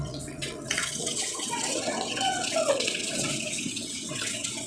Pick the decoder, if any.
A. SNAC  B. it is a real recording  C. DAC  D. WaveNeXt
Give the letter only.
D